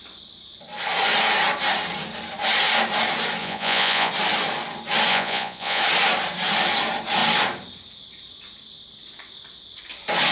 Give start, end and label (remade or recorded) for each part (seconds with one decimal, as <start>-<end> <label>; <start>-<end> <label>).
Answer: 0.0-3.4 recorded; 3.4-4.1 remade; 4.1-5.1 recorded; 5.1-5.8 remade; 5.8-10.3 recorded